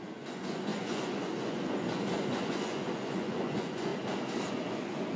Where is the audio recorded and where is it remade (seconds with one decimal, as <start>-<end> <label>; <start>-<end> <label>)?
0.0-3.9 remade; 3.9-4.5 recorded; 4.5-5.2 remade